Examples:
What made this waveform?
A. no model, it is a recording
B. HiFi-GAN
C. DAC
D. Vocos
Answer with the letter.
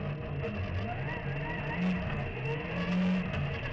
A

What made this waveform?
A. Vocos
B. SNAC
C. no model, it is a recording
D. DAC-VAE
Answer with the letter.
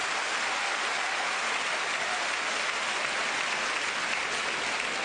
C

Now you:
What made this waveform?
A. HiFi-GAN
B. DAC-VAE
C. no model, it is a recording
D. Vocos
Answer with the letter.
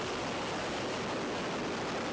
C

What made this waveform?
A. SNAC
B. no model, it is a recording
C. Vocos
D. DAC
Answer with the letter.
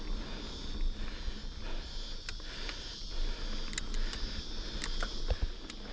B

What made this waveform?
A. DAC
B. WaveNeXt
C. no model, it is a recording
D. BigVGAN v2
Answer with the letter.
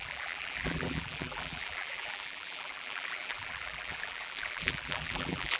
D